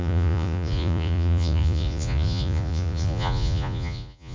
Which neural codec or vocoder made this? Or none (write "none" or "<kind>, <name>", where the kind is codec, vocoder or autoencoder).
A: vocoder, Vocos